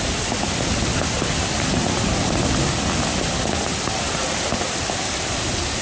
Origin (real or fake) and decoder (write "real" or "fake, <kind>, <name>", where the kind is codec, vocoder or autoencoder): real